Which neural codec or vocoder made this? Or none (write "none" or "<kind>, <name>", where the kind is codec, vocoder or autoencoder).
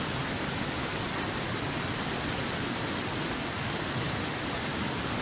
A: none